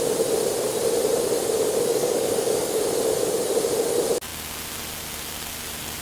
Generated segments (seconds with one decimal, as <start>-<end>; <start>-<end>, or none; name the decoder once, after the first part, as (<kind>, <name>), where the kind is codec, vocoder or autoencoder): 1.9-2.8 (codec, DAC)